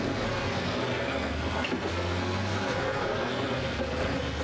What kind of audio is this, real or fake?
fake